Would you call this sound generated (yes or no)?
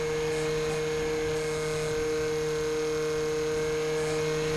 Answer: no